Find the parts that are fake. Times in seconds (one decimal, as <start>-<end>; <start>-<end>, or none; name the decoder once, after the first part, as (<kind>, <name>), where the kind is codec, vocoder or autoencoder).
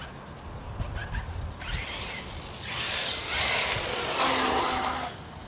none